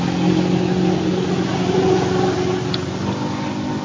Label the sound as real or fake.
real